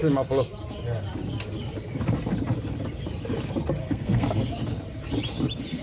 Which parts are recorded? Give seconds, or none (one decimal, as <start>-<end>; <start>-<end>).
0.0-3.8; 4.5-5.8